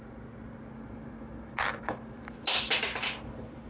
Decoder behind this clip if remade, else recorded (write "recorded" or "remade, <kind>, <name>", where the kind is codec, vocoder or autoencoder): recorded